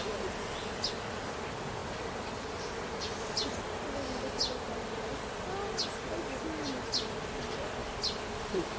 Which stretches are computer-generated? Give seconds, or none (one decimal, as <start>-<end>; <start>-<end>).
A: 1.8-3.0; 7.8-8.8